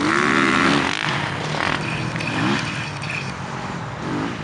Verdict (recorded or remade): recorded